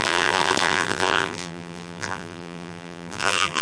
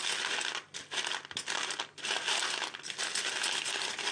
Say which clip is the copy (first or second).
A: first